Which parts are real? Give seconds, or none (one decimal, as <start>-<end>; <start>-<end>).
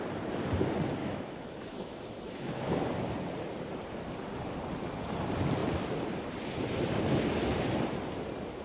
0.0-1.0; 2.7-8.6